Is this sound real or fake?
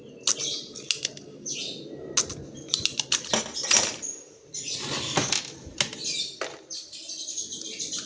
real